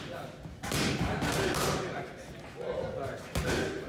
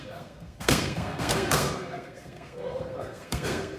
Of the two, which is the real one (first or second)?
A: first